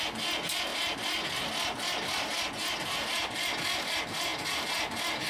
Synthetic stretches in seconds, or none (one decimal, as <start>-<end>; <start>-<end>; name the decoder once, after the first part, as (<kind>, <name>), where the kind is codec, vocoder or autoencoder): none